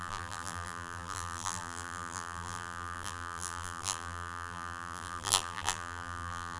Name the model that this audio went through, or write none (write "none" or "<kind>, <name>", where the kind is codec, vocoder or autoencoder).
vocoder, BigVGAN v2